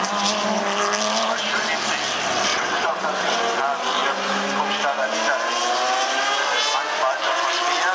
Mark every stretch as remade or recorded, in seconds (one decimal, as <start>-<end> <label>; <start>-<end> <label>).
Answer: 0.0-2.5 recorded; 2.5-3.4 remade; 3.4-7.9 recorded